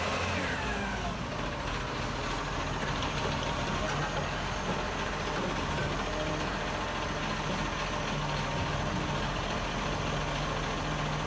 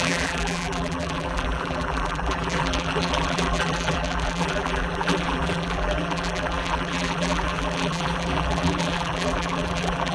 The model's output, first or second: second